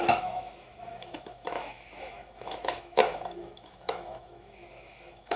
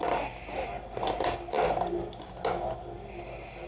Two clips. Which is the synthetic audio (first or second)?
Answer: first